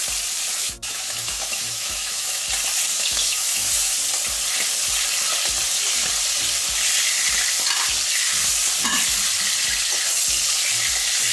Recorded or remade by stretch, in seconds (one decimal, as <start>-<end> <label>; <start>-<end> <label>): 0.0-0.6 recorded; 0.6-2.4 remade; 2.4-2.9 recorded; 2.9-3.9 remade; 3.9-11.3 recorded